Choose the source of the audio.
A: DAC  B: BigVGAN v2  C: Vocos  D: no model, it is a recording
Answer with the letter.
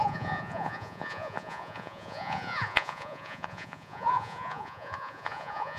C